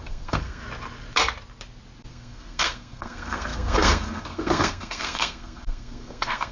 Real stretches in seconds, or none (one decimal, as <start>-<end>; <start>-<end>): 0.6-2.1